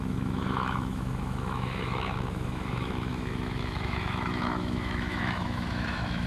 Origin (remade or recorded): remade